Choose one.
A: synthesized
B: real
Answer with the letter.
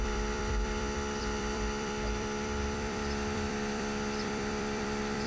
A